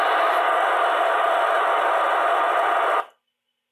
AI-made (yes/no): no